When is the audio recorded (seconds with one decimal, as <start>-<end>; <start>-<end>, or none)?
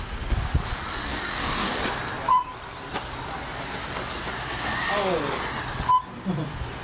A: 0.0-1.1; 1.8-6.8